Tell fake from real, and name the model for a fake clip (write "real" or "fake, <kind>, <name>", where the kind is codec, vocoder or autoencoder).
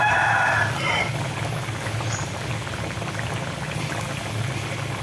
real